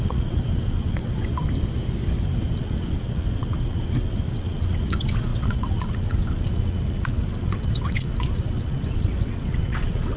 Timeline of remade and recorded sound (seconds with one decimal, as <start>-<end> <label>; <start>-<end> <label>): 0.0-1.3 remade; 1.3-2.6 recorded; 2.6-10.2 remade